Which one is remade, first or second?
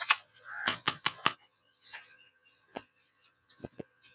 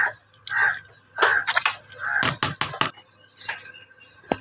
first